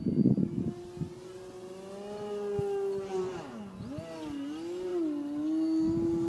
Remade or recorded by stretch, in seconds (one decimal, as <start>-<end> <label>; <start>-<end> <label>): 0.0-6.3 recorded